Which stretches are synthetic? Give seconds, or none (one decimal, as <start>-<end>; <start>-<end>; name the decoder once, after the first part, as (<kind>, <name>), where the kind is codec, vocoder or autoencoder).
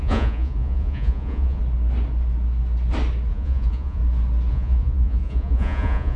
0.0-1.6 (vocoder, Vocos); 3.3-4.0; 4.5-6.2